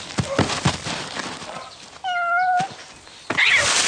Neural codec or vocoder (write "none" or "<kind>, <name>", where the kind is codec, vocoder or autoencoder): none